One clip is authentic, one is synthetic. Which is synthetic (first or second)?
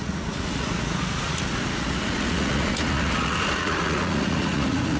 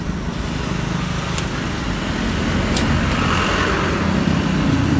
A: first